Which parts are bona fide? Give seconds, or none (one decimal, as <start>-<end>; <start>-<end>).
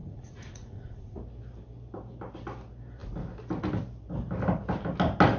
1.2-5.4